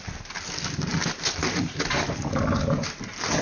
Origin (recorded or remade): recorded